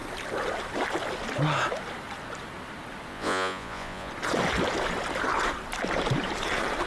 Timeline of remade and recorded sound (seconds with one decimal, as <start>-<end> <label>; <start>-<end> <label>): 0.0-3.1 recorded; 3.1-4.1 remade; 4.1-6.9 recorded